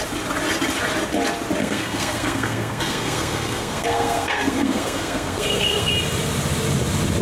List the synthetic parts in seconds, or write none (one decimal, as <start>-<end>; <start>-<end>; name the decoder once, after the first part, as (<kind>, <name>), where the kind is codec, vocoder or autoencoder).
1.6-5.9 (codec, SNAC)